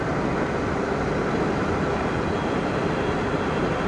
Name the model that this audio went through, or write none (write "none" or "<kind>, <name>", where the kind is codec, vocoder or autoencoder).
none